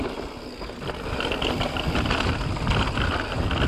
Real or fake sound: real